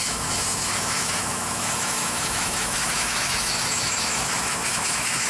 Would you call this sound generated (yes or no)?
yes